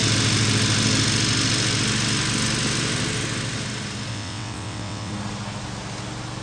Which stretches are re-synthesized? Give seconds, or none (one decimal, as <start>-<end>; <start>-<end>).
4.1-5.1